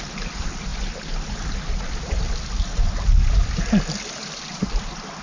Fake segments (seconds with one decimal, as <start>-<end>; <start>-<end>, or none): none